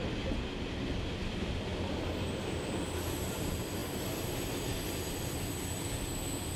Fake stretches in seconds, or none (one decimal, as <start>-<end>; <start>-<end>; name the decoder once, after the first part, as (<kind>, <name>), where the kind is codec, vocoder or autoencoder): none

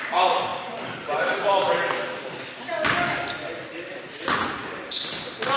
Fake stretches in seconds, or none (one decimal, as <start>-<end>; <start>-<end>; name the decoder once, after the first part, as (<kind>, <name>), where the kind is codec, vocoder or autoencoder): none

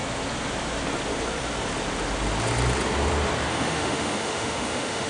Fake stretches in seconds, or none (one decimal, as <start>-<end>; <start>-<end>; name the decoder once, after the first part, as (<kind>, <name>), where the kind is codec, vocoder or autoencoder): 3.5-5.1 (autoencoder, DAC-VAE)

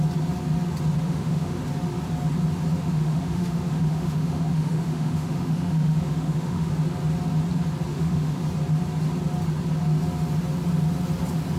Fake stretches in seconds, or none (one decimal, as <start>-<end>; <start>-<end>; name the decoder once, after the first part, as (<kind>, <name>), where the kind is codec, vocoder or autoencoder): 1.0-1.6 (autoencoder, DAC-VAE); 2.7-6.7; 7.9-8.4

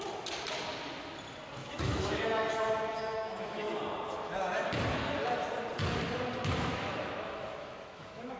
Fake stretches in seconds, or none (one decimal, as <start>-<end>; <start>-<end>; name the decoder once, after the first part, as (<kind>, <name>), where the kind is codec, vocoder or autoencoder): 1.6-2.2 (autoencoder, DAC-VAE); 2.9-3.8; 6.4-8.4